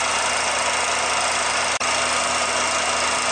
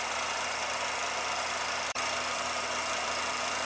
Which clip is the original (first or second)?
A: first